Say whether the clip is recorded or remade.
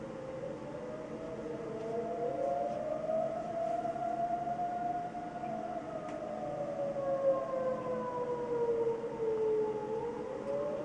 recorded